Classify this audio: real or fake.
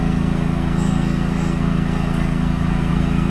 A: fake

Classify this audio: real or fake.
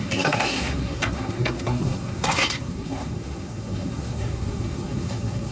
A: fake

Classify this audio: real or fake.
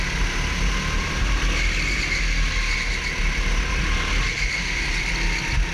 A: real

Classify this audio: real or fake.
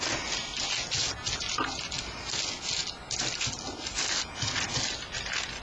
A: real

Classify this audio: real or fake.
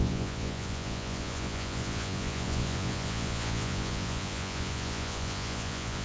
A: fake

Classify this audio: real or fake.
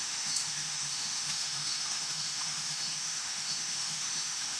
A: fake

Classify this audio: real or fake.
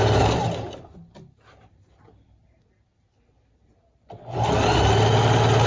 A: real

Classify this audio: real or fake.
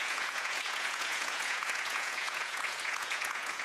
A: fake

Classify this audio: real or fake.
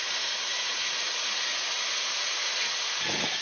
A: fake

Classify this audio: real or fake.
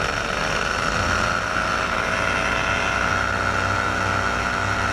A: real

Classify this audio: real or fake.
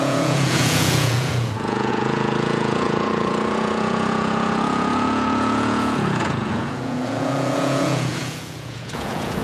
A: fake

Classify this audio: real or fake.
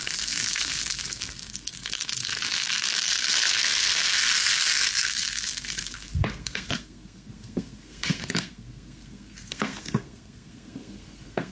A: fake